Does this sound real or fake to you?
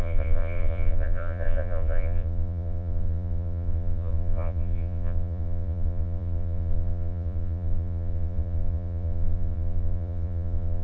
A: fake